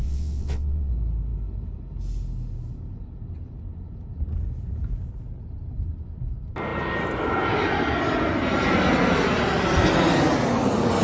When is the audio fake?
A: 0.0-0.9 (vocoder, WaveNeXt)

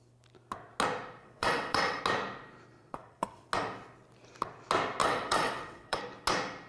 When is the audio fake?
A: 1.2-2.0 (vocoder, WaveNeXt); 2.8-3.5; 5.0-6.0

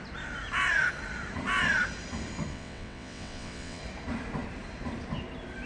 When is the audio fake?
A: 2.5-3.8 (vocoder, WaveNeXt)

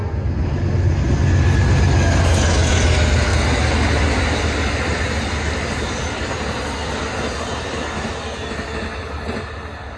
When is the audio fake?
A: none

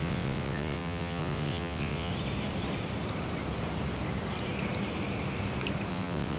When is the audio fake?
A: 0.0-2.1 (vocoder, WaveNeXt); 5.9-6.4

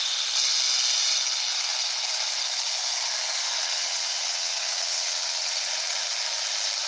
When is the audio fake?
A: 3.6-6.1 (vocoder, WaveNeXt)

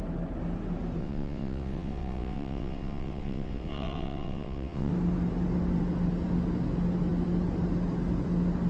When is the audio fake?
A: 1.0-4.9 (vocoder, WaveNeXt)